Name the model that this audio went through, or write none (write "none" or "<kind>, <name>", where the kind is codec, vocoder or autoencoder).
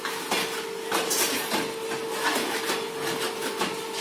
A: none